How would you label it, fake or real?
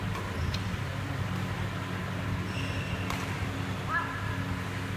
real